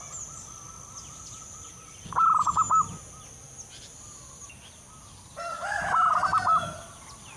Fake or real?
real